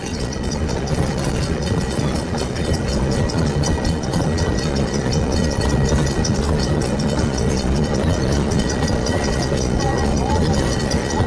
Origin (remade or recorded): remade